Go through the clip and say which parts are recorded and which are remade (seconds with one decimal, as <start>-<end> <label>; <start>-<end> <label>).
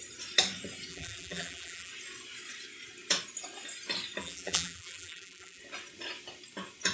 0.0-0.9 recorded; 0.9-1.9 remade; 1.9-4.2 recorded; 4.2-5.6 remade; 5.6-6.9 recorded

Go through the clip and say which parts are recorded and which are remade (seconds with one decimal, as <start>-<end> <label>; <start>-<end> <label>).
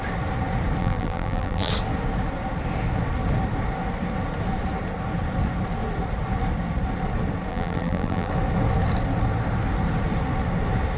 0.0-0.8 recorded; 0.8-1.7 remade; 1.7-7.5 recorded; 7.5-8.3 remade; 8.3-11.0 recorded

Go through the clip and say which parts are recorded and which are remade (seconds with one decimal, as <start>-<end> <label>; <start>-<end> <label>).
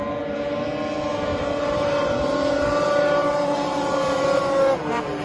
0.0-1.3 recorded; 1.3-4.4 remade; 4.4-5.2 recorded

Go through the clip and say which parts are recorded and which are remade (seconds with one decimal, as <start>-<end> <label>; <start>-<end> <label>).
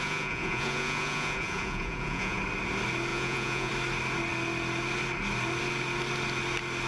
0.0-2.4 remade; 2.4-3.1 recorded; 3.1-3.7 remade; 3.7-6.9 recorded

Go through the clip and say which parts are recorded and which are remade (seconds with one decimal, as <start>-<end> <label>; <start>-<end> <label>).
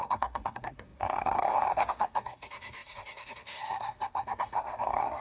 0.0-5.2 remade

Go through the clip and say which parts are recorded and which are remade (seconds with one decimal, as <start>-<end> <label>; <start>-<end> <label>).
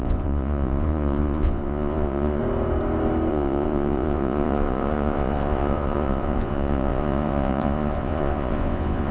0.0-2.4 remade; 2.4-3.3 recorded; 3.3-9.1 remade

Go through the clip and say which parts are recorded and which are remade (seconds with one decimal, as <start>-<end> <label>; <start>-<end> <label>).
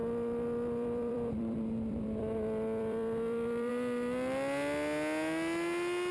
0.0-3.7 remade; 3.7-6.1 recorded